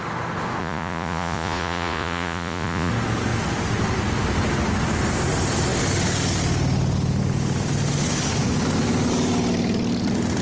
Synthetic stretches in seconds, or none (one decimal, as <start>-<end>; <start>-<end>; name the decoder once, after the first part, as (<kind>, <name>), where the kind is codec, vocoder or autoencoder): 0.6-2.9 (vocoder, Vocos)